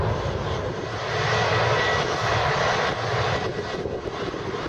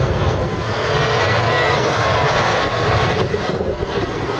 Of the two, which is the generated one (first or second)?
second